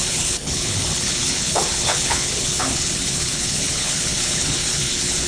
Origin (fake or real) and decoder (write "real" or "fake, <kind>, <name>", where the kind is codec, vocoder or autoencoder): fake, codec, HILCodec